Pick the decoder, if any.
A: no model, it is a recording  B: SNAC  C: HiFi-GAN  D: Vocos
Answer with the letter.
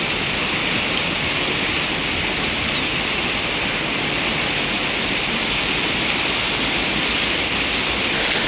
A